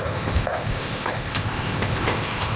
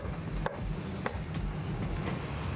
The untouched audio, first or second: second